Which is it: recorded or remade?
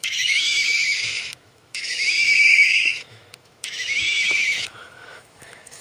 remade